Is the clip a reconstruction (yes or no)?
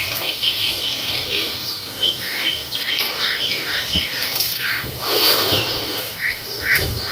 yes